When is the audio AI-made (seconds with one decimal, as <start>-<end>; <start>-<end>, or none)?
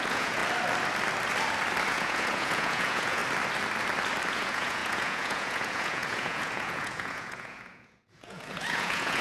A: 0.0-0.4; 1.9-3.2; 4.3-9.2